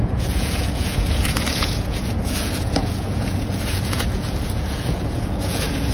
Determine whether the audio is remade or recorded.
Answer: remade